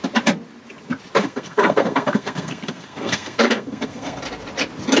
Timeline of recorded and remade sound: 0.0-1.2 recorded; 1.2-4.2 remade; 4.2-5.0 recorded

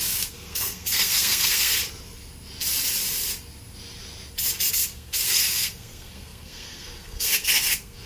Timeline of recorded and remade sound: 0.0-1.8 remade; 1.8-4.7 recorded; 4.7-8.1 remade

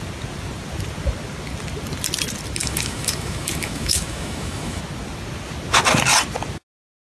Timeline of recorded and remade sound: 0.0-2.6 recorded; 2.6-4.8 remade; 4.8-7.1 recorded

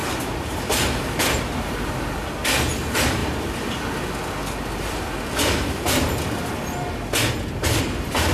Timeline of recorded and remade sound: 0.0-1.9 remade; 1.9-8.3 recorded

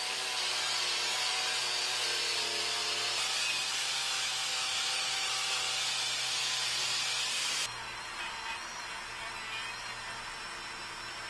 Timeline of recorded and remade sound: 0.0-4.5 recorded; 4.5-5.3 remade; 5.3-11.3 recorded

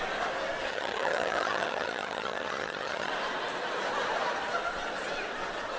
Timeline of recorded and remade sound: 0.0-0.7 recorded; 0.7-3.1 remade; 3.1-5.8 recorded

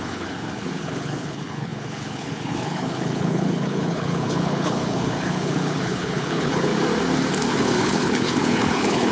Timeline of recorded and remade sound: 0.0-6.7 remade; 6.7-7.5 recorded; 7.5-9.1 remade